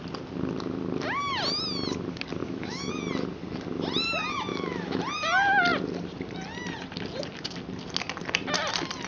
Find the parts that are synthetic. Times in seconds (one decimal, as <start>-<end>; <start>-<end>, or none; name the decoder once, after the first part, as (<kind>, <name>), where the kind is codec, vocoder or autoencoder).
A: 2.4-2.9 (autoencoder, DAC-VAE); 4.5-5.0

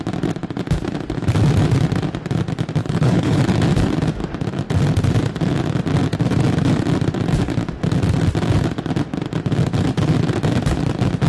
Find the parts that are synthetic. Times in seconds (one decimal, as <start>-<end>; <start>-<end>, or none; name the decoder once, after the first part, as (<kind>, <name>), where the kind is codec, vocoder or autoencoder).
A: 2.8-3.4 (codec, HILCodec)